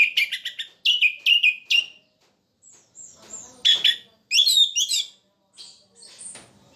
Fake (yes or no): no